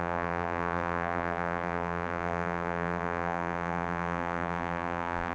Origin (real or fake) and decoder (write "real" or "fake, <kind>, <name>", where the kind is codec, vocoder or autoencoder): fake, vocoder, BigVGAN v2